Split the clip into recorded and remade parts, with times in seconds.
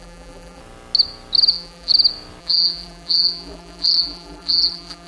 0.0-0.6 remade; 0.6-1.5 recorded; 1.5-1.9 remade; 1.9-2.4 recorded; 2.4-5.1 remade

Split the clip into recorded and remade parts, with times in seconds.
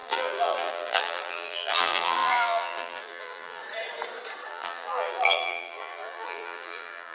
0.0-3.6 remade; 3.6-4.5 recorded; 4.5-7.1 remade